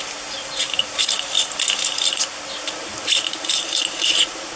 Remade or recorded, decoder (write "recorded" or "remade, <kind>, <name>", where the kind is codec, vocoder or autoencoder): recorded